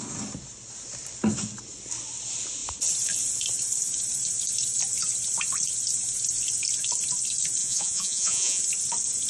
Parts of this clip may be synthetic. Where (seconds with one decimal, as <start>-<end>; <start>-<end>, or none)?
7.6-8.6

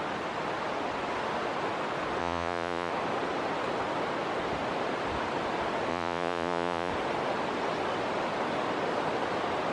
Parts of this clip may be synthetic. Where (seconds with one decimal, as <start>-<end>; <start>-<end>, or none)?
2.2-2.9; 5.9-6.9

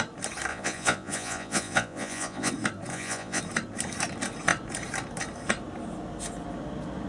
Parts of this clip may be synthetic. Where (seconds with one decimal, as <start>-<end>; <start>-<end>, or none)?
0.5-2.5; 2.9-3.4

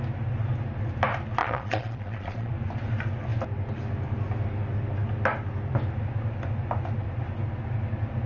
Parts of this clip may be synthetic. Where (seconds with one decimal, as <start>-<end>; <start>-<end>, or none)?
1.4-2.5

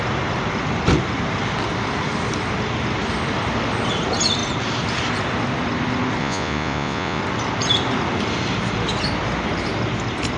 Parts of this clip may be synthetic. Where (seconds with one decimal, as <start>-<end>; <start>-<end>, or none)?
6.2-7.2

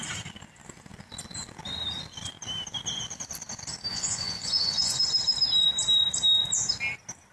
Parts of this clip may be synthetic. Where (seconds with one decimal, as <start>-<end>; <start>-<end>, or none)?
3.9-5.0

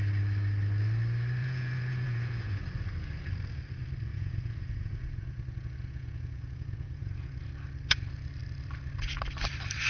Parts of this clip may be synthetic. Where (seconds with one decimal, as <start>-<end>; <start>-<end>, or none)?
1.4-2.6; 4.1-7.4

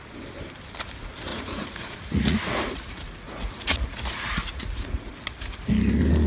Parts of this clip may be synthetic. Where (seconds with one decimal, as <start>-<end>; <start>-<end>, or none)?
1.3-5.1